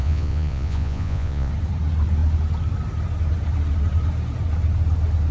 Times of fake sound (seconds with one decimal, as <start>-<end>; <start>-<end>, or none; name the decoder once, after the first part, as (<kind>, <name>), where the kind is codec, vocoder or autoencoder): 0.0-1.5 (vocoder, Vocos)